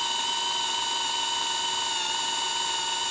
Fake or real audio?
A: real